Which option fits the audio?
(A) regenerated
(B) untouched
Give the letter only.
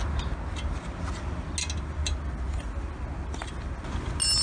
B